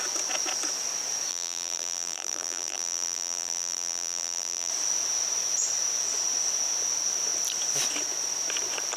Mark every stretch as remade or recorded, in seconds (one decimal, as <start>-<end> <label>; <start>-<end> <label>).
0.0-1.3 recorded; 1.3-4.7 remade; 4.7-9.0 recorded